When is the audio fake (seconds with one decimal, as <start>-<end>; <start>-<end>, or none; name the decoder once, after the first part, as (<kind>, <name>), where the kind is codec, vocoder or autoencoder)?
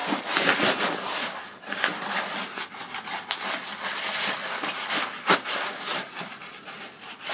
0.0-2.3 (vocoder, BigVGAN v2)